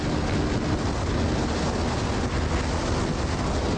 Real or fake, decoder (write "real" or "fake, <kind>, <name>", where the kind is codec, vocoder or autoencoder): real